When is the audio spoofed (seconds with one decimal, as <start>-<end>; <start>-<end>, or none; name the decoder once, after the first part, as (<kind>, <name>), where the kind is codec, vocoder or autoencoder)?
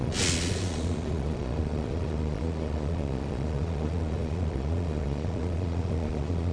0.0-6.5 (vocoder, Vocos)